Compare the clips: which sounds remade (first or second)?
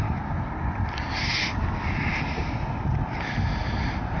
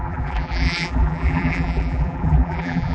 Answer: second